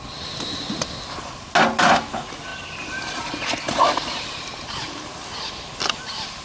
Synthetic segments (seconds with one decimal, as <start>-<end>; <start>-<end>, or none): none